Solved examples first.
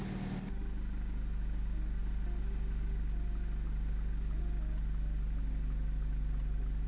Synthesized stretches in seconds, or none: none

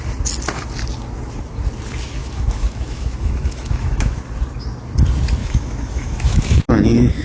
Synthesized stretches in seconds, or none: 2.2-4.2 (autoencoder, DAC-VAE); 5.4-6.7

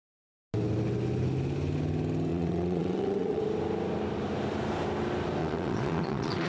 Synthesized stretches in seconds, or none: 2.3-3.4 (vocoder, WaveNeXt); 5.4-6.5